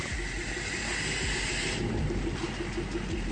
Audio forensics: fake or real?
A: real